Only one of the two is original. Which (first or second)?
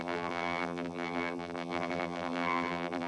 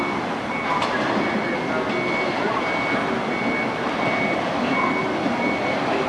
second